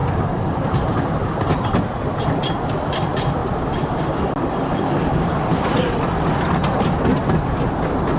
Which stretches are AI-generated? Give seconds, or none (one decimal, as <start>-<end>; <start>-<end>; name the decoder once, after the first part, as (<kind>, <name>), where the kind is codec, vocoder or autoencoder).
none